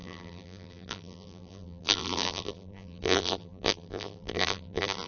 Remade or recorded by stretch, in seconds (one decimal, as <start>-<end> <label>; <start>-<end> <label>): 0.0-5.1 remade